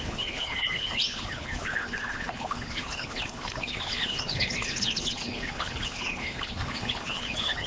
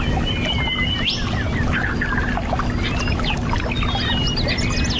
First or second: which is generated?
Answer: first